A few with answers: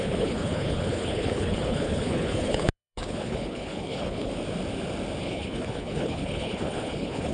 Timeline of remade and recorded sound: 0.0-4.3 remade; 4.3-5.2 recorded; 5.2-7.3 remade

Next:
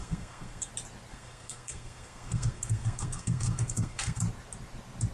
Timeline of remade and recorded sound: 0.0-0.7 remade; 0.7-1.1 recorded; 1.1-4.2 remade; 4.2-5.1 recorded

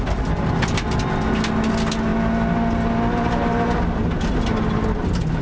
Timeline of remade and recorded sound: 0.0-5.4 recorded

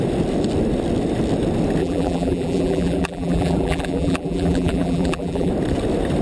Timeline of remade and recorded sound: 0.0-1.8 recorded; 1.8-5.5 remade; 5.5-6.2 recorded

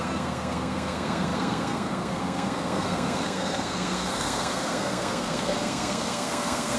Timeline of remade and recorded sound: 0.0-6.8 remade

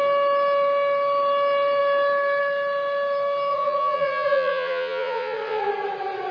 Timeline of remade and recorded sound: 0.0-3.5 recorded; 3.5-5.7 remade; 5.7-6.3 recorded